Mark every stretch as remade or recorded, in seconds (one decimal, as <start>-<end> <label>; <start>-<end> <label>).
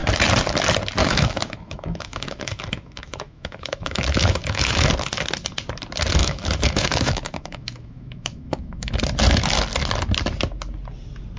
0.0-1.0 recorded; 1.0-4.9 remade; 4.9-6.2 recorded; 6.2-8.9 remade; 8.9-11.4 recorded